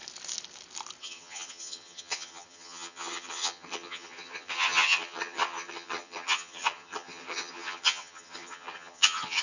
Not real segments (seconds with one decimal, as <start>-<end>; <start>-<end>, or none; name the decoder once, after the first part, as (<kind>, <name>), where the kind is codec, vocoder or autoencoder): 1.0-9.4 (vocoder, HiFi-GAN)